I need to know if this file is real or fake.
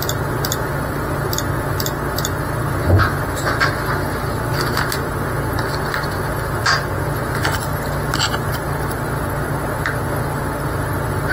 real